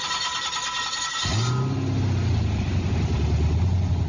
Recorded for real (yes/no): yes